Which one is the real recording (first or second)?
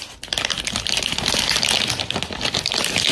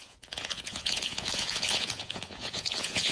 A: first